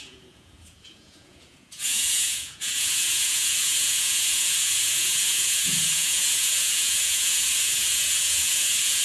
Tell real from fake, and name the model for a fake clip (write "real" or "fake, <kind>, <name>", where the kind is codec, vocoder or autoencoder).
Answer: fake, vocoder, Vocos